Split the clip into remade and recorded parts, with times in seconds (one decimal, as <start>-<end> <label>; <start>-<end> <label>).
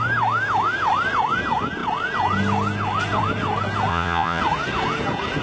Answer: 0.0-3.9 recorded; 3.9-4.4 remade; 4.4-5.4 recorded